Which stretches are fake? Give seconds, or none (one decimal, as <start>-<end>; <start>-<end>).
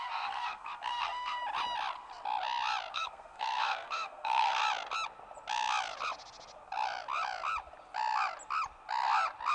0.0-1.4; 2.9-4.6